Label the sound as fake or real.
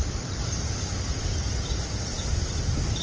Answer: real